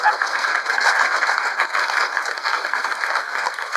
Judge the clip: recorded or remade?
remade